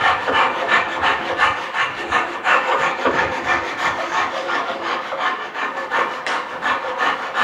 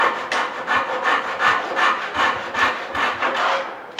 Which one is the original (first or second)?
second